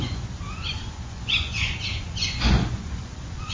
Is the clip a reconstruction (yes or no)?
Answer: yes